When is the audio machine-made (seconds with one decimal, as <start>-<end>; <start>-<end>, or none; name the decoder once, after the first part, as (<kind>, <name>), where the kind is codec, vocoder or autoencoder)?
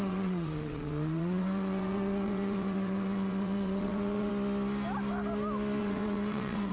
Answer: 0.0-4.3 (vocoder, WaveNeXt); 5.8-6.7